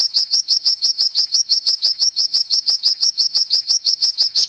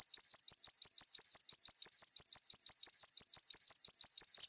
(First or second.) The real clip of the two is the second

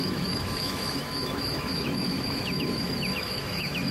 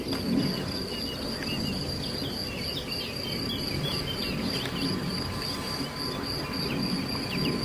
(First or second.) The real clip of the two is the second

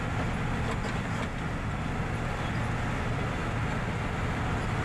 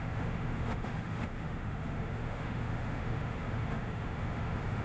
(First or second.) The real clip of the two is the first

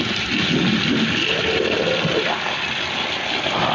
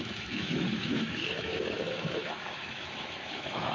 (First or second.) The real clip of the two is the first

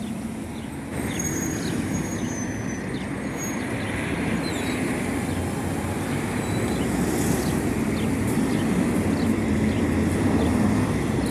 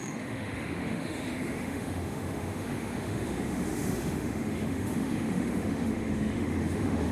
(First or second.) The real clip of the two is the first